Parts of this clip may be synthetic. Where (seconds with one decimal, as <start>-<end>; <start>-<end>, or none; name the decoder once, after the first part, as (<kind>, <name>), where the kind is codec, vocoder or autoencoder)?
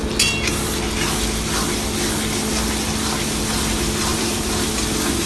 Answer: 4.1-4.7 (vocoder, BigVGAN v2)